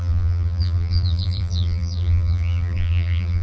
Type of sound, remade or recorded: remade